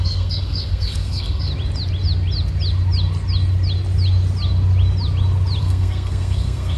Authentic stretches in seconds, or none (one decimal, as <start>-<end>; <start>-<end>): 1.5-5.6

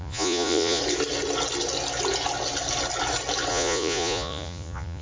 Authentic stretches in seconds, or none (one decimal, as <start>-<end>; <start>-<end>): 0.8-3.5

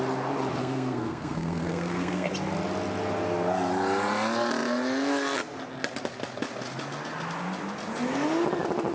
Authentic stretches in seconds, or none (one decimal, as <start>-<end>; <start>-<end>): 0.0-0.6; 2.3-8.9

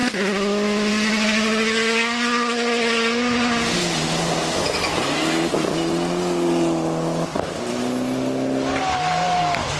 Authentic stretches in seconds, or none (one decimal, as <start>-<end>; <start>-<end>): 0.0-9.8

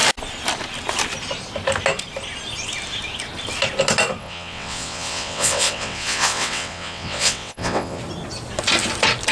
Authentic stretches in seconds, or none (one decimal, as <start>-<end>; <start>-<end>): 0.0-4.2; 8.0-9.3

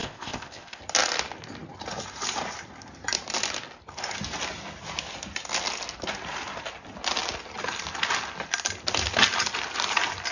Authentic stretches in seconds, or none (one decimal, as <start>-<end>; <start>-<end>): 0.8-10.3

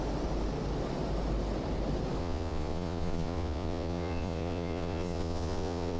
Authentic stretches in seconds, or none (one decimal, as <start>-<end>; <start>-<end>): 0.0-2.2

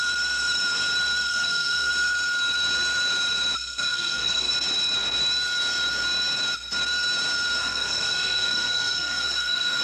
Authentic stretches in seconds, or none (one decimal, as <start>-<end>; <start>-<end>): 0.0-1.3; 1.9-3.7; 4.5-7.6